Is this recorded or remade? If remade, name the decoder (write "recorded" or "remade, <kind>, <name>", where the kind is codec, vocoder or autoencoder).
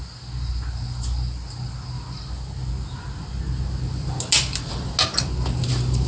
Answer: recorded